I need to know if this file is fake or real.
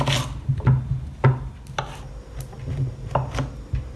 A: real